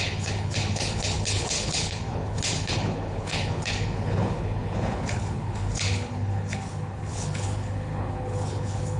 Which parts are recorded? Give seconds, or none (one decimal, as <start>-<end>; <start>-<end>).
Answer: none